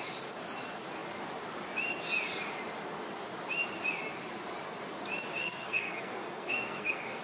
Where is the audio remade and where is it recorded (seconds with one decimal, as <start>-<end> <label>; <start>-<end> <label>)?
0.0-5.3 recorded; 5.3-7.2 remade

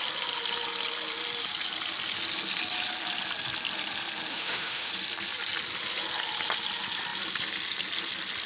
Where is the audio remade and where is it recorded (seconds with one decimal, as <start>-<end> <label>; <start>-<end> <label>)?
0.0-4.3 recorded; 4.3-4.9 remade; 4.9-8.5 recorded

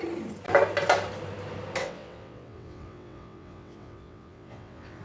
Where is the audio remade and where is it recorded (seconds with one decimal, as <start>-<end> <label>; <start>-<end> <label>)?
0.0-1.8 recorded; 1.8-5.0 remade

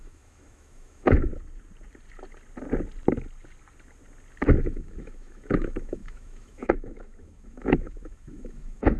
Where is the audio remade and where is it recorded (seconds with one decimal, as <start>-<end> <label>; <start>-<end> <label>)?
0.0-1.3 remade; 1.3-4.6 recorded; 4.6-9.0 remade

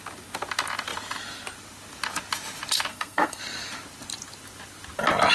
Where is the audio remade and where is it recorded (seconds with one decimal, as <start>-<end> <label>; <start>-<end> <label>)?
0.0-2.9 recorded; 2.9-3.4 remade; 3.4-5.3 recorded

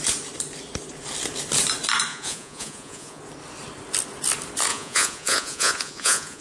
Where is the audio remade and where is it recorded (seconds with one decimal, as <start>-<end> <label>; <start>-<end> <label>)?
0.0-2.1 recorded; 2.1-3.2 remade; 3.2-4.7 recorded; 4.7-6.4 remade

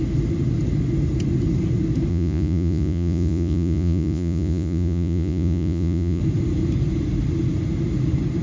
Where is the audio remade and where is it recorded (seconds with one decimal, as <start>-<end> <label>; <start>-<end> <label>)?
0.0-2.1 recorded; 2.1-6.2 remade; 6.2-8.4 recorded

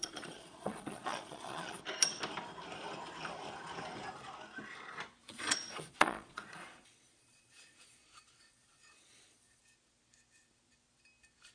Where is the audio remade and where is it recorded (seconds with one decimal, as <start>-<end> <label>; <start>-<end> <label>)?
0.0-1.8 remade; 1.8-5.2 recorded; 5.2-9.6 remade; 9.6-11.5 recorded